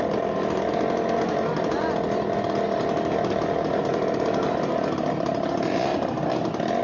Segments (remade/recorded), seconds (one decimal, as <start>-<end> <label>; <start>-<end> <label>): 0.0-6.8 recorded